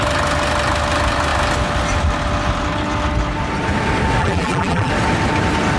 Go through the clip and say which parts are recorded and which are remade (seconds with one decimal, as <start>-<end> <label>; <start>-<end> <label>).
0.0-4.2 recorded; 4.2-4.9 remade; 4.9-5.8 recorded